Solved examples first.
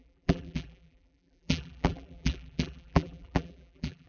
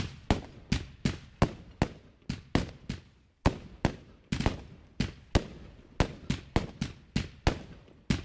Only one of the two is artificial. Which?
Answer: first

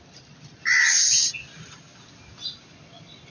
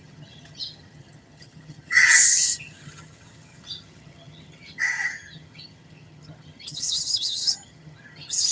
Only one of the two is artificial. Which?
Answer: second